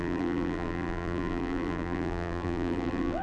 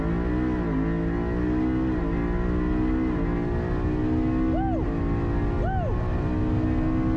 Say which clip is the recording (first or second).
second